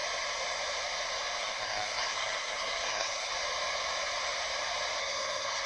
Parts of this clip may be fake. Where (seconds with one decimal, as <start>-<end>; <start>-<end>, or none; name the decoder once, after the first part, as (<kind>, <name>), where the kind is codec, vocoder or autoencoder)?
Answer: 1.4-3.3 (codec, SNAC); 5.0-5.7